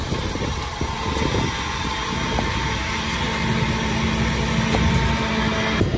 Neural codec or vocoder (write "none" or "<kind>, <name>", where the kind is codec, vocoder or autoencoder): none